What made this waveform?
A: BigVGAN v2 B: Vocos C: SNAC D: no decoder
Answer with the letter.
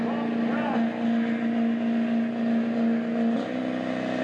D